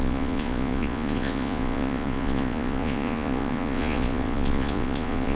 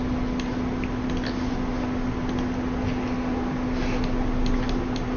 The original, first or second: second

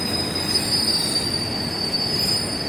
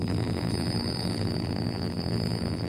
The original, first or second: first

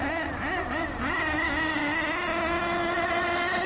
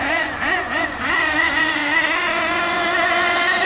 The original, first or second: first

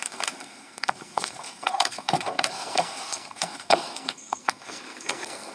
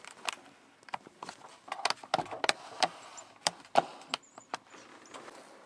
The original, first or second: second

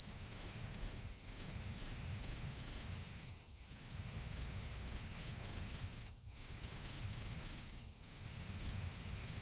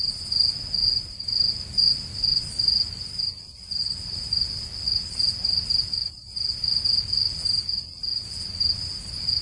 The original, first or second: second